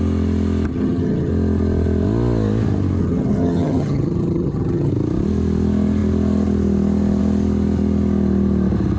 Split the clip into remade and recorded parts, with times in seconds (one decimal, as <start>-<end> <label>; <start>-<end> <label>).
0.0-0.7 recorded; 0.7-1.3 remade; 1.3-3.0 recorded; 3.0-4.9 remade; 4.9-9.0 recorded

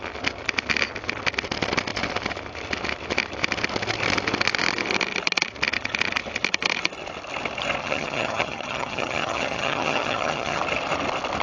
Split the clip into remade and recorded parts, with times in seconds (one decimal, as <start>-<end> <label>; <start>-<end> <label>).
0.0-7.8 recorded; 7.8-10.6 remade; 10.6-11.4 recorded